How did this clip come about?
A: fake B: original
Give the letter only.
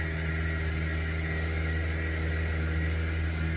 B